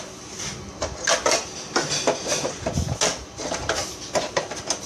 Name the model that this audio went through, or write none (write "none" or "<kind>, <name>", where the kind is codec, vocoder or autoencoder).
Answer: none